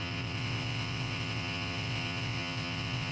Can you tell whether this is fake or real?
fake